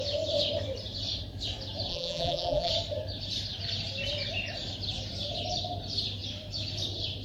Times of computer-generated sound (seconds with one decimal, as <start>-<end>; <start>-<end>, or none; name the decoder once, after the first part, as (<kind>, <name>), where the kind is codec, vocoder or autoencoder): 1.9-2.7 (vocoder, BigVGAN v2)